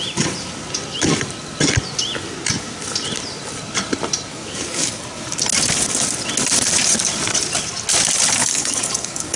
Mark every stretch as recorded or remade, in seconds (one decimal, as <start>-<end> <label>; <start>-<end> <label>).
0.0-4.3 recorded; 4.3-5.0 remade; 5.0-8.4 recorded; 8.4-9.4 remade